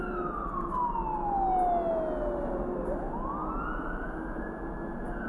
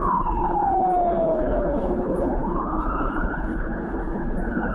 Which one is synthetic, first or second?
second